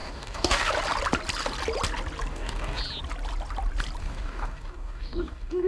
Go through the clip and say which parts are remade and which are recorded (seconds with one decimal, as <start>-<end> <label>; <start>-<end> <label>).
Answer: 0.0-0.7 remade; 0.7-2.3 recorded; 2.3-2.8 remade; 2.8-4.0 recorded; 4.0-5.7 remade